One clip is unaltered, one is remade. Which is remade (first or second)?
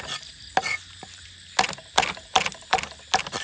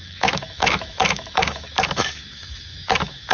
second